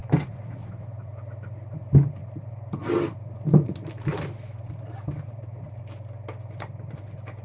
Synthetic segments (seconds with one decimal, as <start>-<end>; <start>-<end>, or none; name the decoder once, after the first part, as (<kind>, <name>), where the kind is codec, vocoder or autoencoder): 0.0-1.4 (vocoder, BigVGAN v2); 2.2-5.8

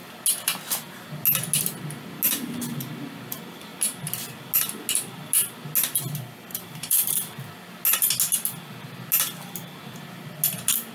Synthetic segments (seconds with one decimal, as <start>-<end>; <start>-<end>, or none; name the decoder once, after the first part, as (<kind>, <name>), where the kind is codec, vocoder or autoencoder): 6.5-7.4 (vocoder, BigVGAN v2)

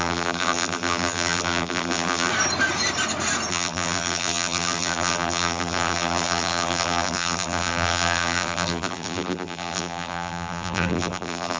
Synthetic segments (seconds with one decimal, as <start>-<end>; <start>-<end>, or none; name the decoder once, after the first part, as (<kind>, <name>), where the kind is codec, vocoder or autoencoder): 0.0-2.3 (vocoder, BigVGAN v2); 3.5-11.6